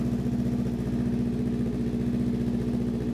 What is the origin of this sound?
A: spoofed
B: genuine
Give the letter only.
B